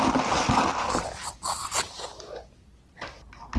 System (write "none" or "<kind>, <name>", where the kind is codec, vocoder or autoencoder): none